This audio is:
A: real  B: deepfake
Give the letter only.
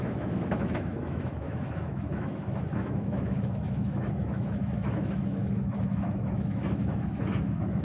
B